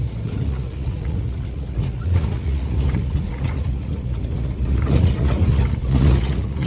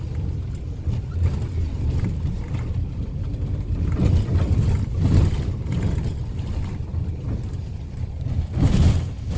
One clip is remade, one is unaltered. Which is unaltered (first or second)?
second